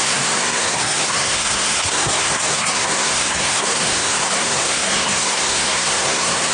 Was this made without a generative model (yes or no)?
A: no